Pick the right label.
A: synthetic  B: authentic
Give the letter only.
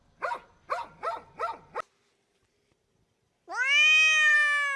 B